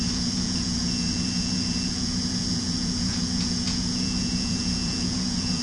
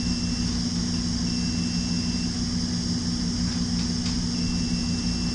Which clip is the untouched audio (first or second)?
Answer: second